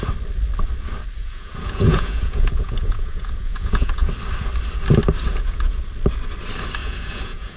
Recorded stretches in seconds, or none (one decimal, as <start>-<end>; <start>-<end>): 0.0-1.2; 4.1-5.3; 5.9-6.8